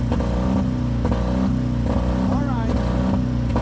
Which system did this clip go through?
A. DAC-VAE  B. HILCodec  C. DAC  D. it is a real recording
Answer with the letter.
D